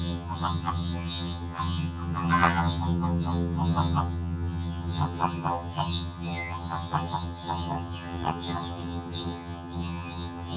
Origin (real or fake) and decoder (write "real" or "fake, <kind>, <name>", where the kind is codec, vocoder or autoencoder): fake, vocoder, HiFi-GAN